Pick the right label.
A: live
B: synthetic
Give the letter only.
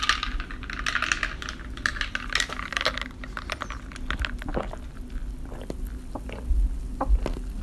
A